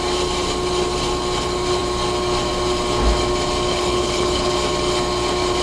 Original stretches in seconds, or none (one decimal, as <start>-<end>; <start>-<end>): 0.0-3.7; 4.5-5.6